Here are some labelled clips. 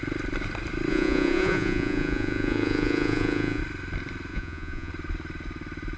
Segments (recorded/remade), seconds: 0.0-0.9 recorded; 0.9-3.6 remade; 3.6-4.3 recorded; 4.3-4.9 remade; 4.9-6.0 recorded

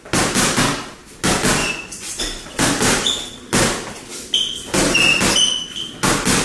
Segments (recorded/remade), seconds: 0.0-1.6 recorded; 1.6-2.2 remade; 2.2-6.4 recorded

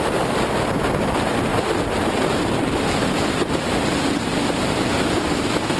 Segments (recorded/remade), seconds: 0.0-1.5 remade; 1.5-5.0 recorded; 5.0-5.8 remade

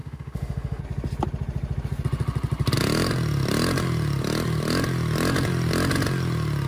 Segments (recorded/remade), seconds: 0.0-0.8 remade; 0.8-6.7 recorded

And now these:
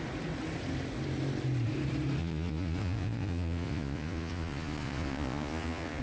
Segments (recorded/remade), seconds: 0.0-2.2 recorded; 2.2-6.0 remade

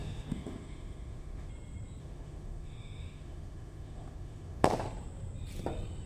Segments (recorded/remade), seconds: 0.0-1.5 remade; 1.5-2.0 recorded; 2.0-4.7 remade; 4.7-6.1 recorded

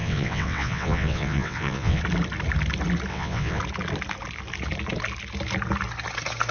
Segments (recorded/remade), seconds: 0.0-2.0 remade; 2.0-3.1 recorded; 3.1-3.6 remade; 3.6-6.5 recorded

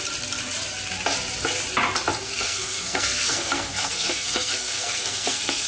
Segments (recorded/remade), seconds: 0.0-2.2 recorded; 2.2-5.7 remade